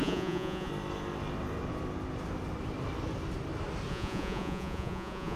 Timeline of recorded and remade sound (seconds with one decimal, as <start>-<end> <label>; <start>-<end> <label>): 0.0-0.7 remade; 0.7-3.9 recorded; 3.9-5.4 remade

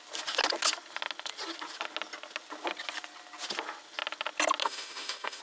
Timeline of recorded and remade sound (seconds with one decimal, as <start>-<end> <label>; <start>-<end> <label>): 0.0-4.6 recorded; 4.6-5.4 remade

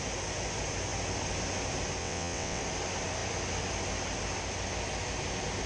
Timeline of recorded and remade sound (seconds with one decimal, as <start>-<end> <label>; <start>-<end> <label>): 0.0-2.0 recorded; 2.0-2.6 remade; 2.6-5.7 recorded

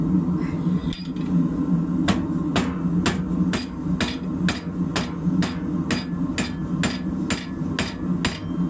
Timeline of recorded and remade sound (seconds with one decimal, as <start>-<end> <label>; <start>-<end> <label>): 0.0-8.7 recorded